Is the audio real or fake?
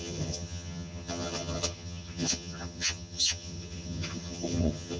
fake